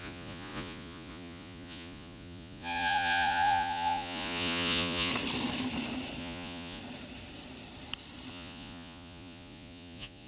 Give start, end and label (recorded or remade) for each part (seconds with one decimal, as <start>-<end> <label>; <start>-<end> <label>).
0.0-5.1 remade; 5.1-6.2 recorded; 6.2-6.8 remade; 6.8-8.3 recorded; 8.3-10.3 remade

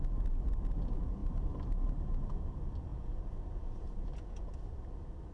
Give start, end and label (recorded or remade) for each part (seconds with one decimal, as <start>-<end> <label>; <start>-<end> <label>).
0.0-2.9 recorded; 2.9-4.5 remade; 4.5-5.3 recorded